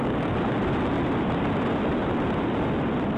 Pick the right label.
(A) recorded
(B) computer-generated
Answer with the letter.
B